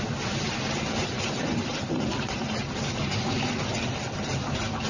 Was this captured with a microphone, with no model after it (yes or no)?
yes